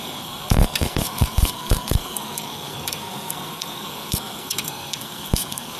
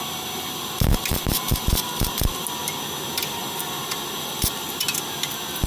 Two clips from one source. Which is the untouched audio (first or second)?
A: second